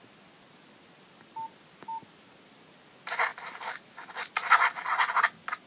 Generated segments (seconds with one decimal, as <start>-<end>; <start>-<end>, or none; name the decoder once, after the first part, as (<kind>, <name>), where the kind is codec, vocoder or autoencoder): none